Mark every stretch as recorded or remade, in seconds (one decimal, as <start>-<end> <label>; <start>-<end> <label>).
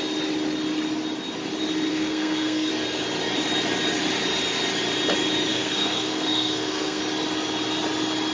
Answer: 0.0-1.9 recorded; 1.9-2.7 remade; 2.7-5.5 recorded; 5.5-7.0 remade; 7.0-8.3 recorded